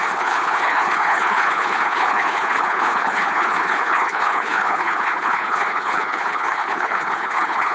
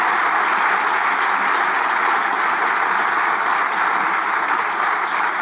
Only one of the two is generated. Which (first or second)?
first